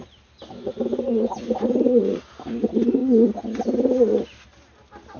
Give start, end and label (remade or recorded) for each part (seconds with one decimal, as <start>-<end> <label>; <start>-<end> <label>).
0.0-0.7 recorded; 0.7-2.2 remade; 2.2-5.2 recorded